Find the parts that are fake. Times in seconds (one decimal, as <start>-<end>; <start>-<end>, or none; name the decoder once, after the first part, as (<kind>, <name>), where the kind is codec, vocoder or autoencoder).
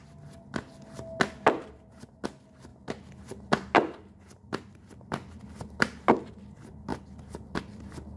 none